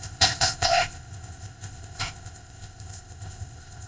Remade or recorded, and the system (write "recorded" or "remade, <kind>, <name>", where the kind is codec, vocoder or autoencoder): remade, codec, ZipCodec